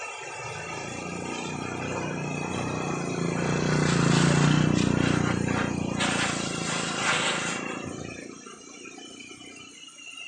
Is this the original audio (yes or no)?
yes